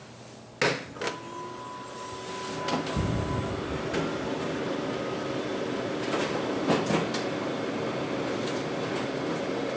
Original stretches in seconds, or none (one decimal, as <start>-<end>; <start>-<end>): 0.0-9.8